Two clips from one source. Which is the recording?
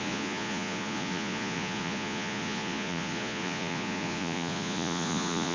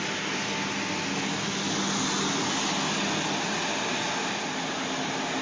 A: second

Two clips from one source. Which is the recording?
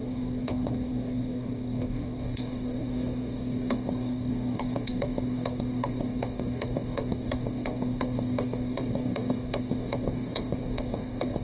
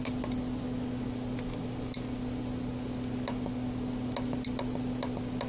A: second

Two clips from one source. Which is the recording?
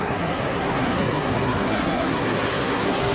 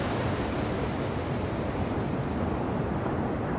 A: second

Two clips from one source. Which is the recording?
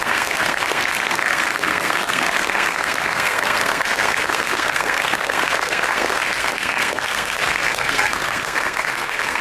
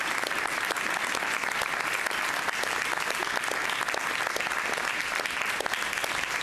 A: second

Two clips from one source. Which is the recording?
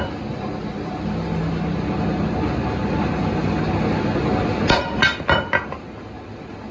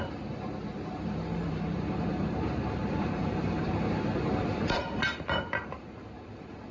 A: first